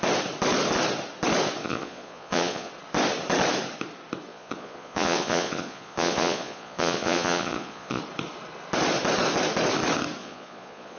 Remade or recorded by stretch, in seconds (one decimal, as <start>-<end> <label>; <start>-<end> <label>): 0.0-1.6 recorded; 1.6-2.7 remade; 2.7-4.3 recorded; 4.3-8.0 remade; 8.0-10.2 recorded; 10.2-11.0 remade